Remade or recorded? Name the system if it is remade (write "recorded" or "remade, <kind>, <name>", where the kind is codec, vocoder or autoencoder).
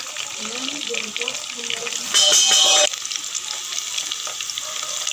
recorded